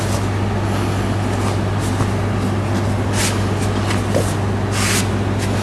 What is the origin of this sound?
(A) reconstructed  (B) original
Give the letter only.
B